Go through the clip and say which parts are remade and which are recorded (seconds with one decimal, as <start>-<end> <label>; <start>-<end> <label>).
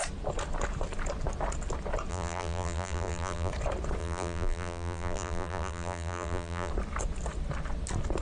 0.0-2.1 recorded; 2.1-3.5 remade; 3.5-4.0 recorded; 4.0-6.7 remade; 6.7-8.2 recorded